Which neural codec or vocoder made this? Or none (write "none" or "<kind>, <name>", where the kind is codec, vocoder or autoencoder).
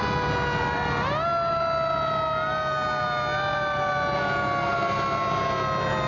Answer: none